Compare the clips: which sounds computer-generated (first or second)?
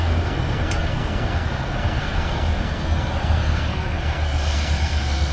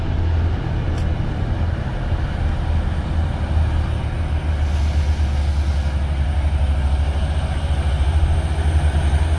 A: first